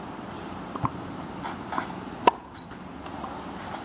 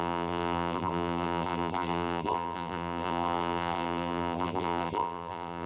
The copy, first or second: second